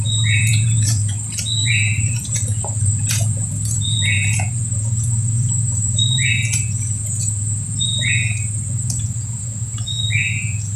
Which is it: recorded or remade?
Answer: remade